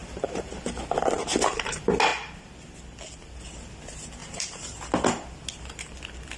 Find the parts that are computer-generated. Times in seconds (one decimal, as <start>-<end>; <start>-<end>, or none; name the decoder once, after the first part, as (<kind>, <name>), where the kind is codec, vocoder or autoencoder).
0.0-0.5 (vocoder, BigVGAN v2); 4.2-4.9